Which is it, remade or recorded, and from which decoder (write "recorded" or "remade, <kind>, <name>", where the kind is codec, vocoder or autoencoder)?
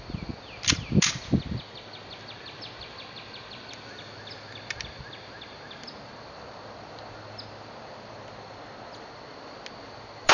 recorded